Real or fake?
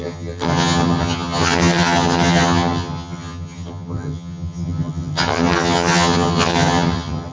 fake